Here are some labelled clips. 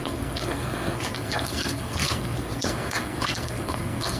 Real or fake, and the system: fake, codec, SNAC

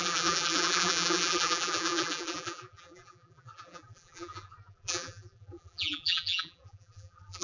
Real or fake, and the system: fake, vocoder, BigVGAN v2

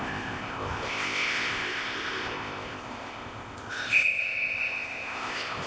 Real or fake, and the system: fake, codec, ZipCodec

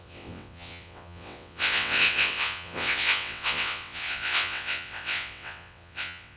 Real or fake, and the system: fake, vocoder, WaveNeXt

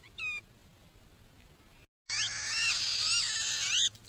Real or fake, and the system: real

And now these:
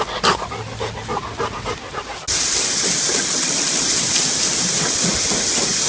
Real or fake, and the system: real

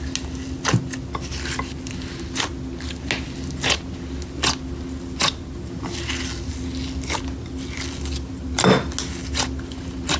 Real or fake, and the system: real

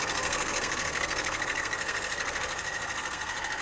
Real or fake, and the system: fake, codec, SNAC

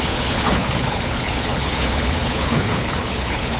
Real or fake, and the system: fake, codec, HILCodec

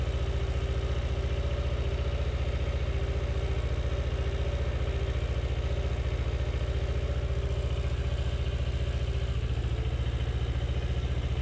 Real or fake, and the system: real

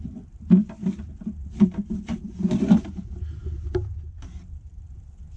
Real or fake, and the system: real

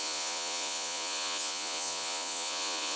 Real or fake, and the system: fake, vocoder, Vocos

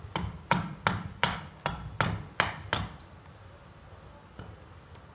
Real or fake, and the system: real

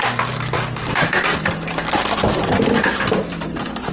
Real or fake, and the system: fake, vocoder, BigVGAN v2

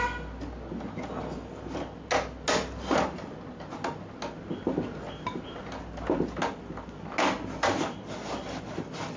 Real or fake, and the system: real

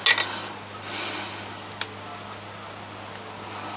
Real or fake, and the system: real